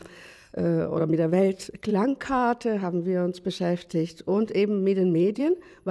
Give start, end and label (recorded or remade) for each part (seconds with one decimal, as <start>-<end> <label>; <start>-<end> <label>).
0.0-1.0 recorded; 1.0-1.9 remade; 1.9-5.4 recorded; 5.4-5.9 remade